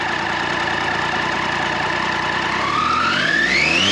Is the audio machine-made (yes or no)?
no